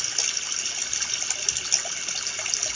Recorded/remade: recorded